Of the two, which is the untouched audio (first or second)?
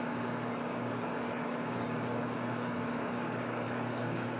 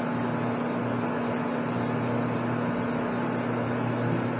second